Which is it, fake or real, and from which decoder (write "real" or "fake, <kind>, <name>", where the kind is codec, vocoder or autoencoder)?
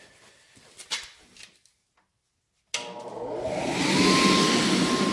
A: real